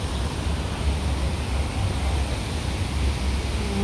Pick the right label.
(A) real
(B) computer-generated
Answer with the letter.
A